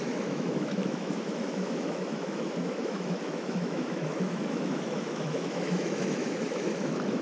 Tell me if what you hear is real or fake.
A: fake